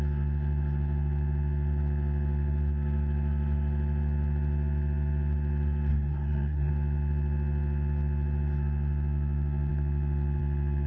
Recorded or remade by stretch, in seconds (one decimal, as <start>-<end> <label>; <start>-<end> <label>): 0.0-5.9 recorded; 5.9-6.7 remade; 6.7-10.9 recorded

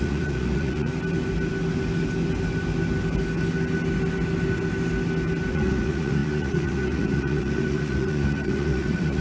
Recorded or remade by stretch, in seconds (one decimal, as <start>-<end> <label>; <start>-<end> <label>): 0.0-0.9 remade; 0.9-5.5 recorded; 5.5-9.2 remade

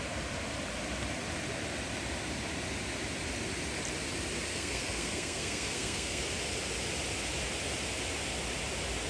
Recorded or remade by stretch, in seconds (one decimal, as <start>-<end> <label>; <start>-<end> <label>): 0.0-4.5 recorded; 4.5-6.2 remade; 6.2-9.1 recorded

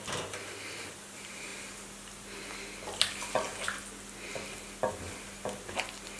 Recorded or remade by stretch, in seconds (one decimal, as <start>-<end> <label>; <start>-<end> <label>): 0.0-6.2 recorded

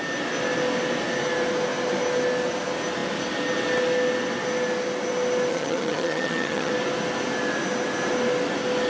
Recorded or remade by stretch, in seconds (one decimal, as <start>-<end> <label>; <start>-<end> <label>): 0.0-5.5 recorded; 5.5-6.7 remade; 6.7-8.9 recorded

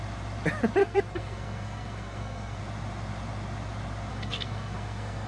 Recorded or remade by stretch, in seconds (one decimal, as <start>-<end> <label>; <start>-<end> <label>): 0.0-0.8 recorded; 0.8-2.6 remade; 2.6-4.1 recorded; 4.1-5.3 remade

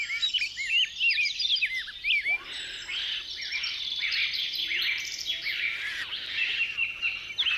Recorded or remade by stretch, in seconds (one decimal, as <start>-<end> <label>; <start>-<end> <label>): 0.0-1.5 remade; 1.5-3.5 recorded; 3.5-7.6 remade